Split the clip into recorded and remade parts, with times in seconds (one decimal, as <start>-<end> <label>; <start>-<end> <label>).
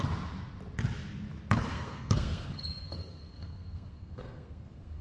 0.0-1.7 recorded; 1.7-5.0 remade